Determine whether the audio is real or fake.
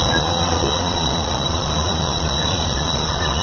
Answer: fake